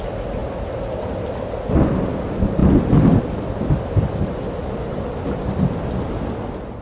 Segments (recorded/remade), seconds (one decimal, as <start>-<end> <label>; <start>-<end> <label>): 0.0-0.4 recorded; 0.4-1.1 remade; 1.1-6.8 recorded